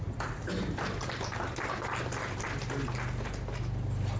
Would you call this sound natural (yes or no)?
yes